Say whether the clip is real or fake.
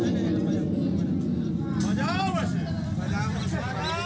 real